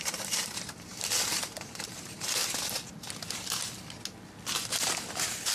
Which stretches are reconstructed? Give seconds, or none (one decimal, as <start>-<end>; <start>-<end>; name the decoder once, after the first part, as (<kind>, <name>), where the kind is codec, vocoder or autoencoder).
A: 0.0-2.4 (vocoder, BigVGAN v2); 4.8-5.5